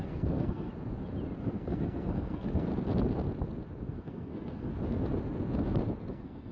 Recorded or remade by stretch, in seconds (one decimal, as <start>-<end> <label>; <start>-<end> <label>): 0.0-0.7 remade; 0.7-1.4 recorded; 1.4-2.7 remade; 2.7-3.8 recorded; 3.8-4.7 remade; 4.7-6.1 recorded; 6.1-6.5 remade